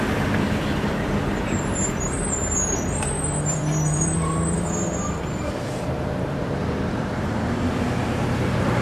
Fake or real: fake